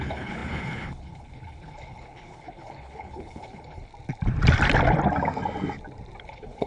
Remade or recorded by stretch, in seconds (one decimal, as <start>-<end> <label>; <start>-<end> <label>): 0.0-3.9 remade; 3.9-6.2 recorded; 6.2-6.7 remade